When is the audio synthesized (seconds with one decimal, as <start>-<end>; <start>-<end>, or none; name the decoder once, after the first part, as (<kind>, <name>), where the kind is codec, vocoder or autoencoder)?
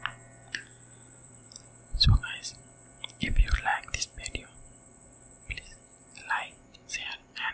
1.2-3.2 (vocoder, BigVGAN v2); 3.7-6.0; 6.7-7.5